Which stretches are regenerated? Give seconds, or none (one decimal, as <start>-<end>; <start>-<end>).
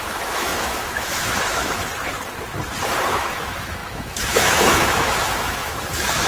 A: 0.0-1.9; 3.1-6.3